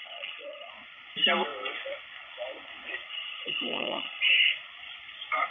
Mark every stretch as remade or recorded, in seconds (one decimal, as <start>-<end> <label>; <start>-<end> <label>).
0.0-0.7 remade; 0.7-3.1 recorded; 3.1-4.2 remade; 4.2-5.5 recorded